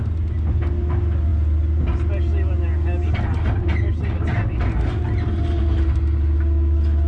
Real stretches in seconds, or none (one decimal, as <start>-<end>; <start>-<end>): 0.0-7.1